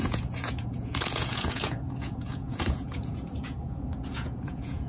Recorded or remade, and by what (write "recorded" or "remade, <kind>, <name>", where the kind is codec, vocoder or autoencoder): remade, vocoder, Vocos